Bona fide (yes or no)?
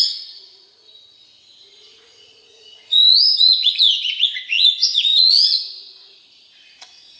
no